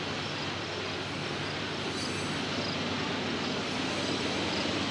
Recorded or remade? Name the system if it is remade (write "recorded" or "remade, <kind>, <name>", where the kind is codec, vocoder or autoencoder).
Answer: recorded